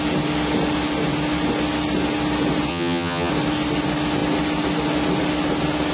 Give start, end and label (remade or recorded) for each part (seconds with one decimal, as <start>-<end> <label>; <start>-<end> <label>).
0.0-2.7 recorded; 2.7-3.3 remade; 3.3-5.9 recorded